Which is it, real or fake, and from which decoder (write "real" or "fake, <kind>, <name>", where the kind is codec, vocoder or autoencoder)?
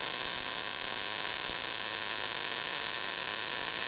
real